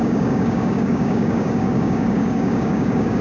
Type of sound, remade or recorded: remade